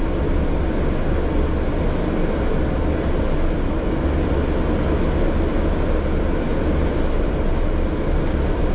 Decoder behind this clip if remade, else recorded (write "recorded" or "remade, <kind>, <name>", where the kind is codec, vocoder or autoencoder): recorded